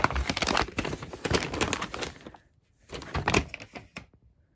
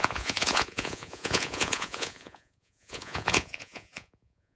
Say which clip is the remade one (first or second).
second